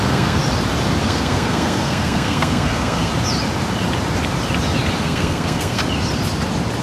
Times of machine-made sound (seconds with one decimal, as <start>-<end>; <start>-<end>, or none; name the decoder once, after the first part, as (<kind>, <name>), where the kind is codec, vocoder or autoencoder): 0.0-0.4 (codec, SNAC); 1.0-3.1; 5.0-5.8